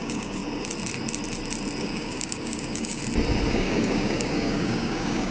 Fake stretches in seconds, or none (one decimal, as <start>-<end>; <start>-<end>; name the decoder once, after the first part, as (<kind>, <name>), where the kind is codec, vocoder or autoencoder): 0.0-0.4 (codec, DAC); 1.8-3.0; 3.5-5.3